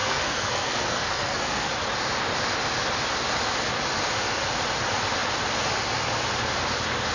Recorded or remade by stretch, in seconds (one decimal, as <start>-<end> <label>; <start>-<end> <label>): 0.0-1.7 remade; 1.7-7.1 recorded